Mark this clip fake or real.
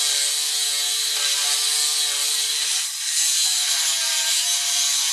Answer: real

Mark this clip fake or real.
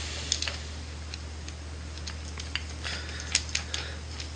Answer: real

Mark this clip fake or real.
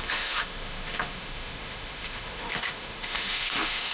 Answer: fake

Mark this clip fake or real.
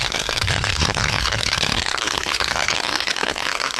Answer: fake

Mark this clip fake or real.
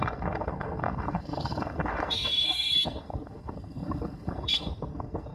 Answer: fake